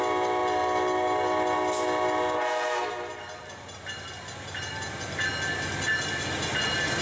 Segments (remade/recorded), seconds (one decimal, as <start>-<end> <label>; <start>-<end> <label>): 0.0-7.0 recorded